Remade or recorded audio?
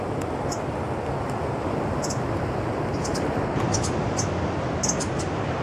recorded